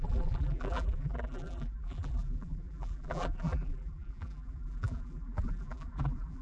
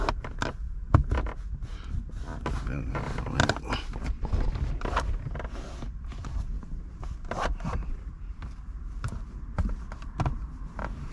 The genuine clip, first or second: second